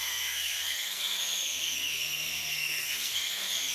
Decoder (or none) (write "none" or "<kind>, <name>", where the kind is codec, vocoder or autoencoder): codec, SNAC